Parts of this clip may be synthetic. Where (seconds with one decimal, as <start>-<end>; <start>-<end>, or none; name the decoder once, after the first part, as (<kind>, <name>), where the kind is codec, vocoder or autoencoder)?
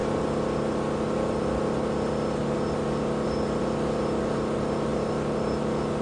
none